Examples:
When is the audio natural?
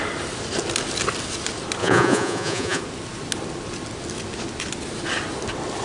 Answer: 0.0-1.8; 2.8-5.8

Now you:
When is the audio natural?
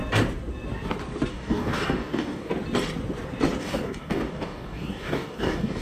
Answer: 0.0-1.3; 2.5-3.6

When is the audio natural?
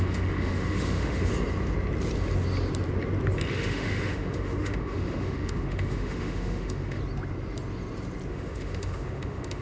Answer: 1.3-3.5; 7.0-8.3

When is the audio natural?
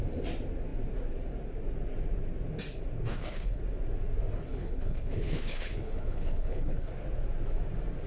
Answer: 0.0-3.1; 3.6-4.5; 6.9-8.1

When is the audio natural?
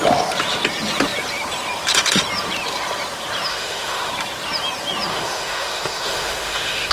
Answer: 0.0-3.5; 4.1-5.1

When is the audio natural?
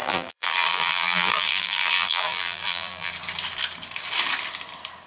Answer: 3.1-5.1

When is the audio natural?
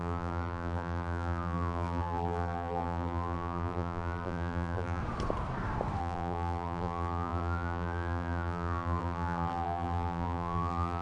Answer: 5.0-6.0